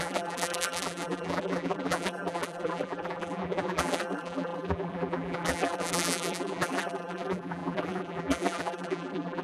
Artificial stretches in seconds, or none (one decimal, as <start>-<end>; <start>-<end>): 0.0-9.4